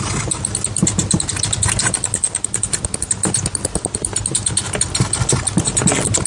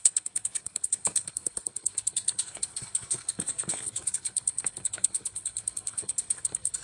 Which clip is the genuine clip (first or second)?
first